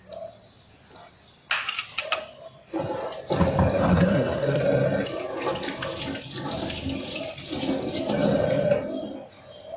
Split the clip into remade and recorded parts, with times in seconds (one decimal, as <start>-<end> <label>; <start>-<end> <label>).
0.0-3.8 recorded; 3.8-4.6 remade; 4.6-9.8 recorded

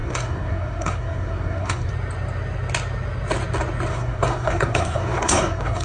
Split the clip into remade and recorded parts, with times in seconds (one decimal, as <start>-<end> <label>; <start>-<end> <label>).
0.0-1.9 remade; 1.9-3.9 recorded; 3.9-5.8 remade

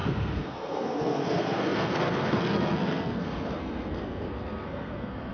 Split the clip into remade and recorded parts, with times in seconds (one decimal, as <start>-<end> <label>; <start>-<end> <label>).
0.0-5.3 remade

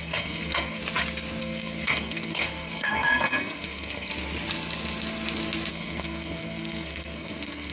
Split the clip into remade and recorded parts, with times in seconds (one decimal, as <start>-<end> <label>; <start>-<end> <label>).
0.0-0.8 remade; 0.8-1.4 recorded; 1.4-4.1 remade; 4.1-5.7 recorded; 5.7-7.7 remade

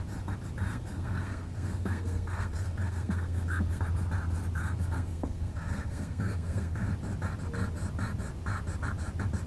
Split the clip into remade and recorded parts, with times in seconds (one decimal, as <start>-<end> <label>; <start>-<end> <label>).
0.0-0.7 recorded; 0.7-3.8 remade; 3.8-4.6 recorded; 4.6-6.9 remade; 6.9-9.5 recorded